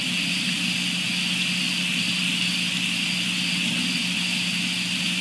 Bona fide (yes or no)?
yes